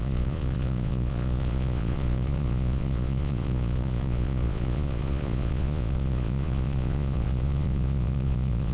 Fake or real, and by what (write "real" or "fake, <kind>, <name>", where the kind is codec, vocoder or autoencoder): fake, vocoder, Vocos